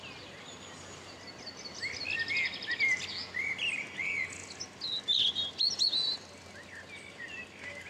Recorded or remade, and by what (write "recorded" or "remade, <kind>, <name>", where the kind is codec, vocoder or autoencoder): recorded